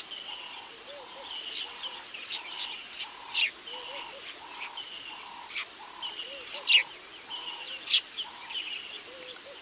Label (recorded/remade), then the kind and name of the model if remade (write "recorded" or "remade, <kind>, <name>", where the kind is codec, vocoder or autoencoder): recorded